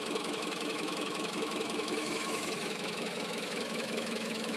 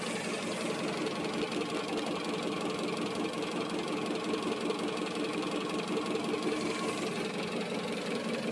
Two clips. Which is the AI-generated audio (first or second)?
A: first